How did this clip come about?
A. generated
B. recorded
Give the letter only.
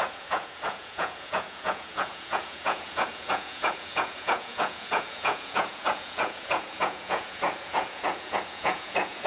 A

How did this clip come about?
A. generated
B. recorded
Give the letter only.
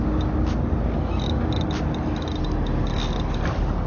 B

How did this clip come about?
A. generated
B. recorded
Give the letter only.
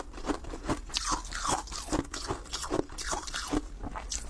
B